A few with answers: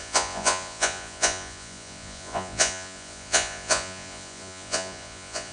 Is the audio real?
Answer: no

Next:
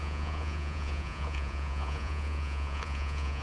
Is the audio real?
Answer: no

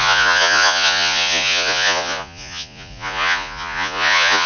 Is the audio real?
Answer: no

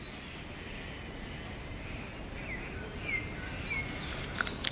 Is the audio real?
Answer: yes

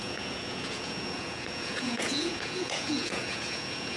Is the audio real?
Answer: no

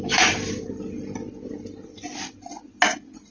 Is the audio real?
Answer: yes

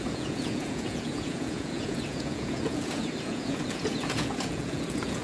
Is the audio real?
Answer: no